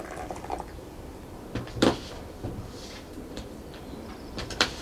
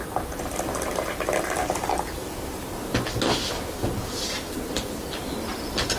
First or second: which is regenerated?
first